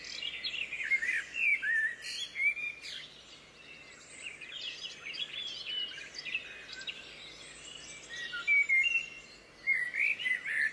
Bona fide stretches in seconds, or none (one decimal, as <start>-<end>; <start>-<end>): 0.0-10.7